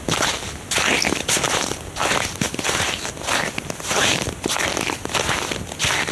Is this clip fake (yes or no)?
no